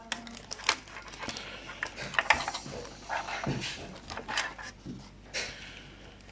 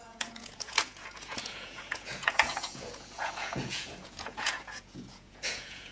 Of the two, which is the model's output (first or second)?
second